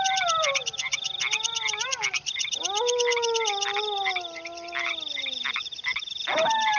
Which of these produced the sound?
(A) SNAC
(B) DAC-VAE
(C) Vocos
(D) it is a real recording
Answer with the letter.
D